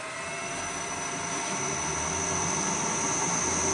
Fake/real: real